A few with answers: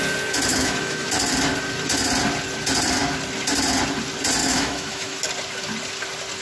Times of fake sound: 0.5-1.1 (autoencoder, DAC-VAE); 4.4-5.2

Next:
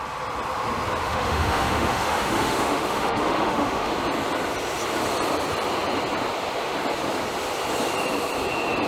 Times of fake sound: 1.0-3.9 (autoencoder, DAC-VAE)